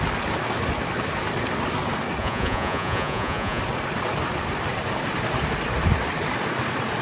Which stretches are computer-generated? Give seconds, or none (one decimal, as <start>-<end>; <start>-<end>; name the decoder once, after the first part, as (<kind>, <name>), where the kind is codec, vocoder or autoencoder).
2.2-3.6 (vocoder, Vocos)